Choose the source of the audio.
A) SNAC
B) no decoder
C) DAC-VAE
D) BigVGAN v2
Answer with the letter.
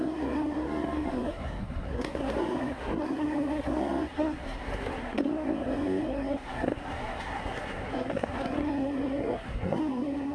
A